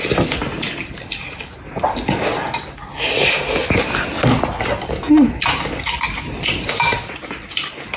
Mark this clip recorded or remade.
recorded